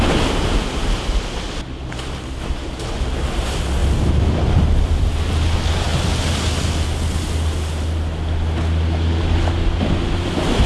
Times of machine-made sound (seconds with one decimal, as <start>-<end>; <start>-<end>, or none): 3.8-5.1